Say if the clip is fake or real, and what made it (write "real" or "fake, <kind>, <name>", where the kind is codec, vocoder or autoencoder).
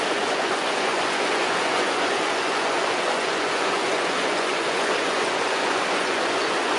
fake, vocoder, Vocos